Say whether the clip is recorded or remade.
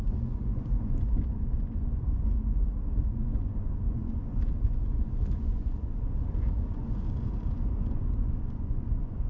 remade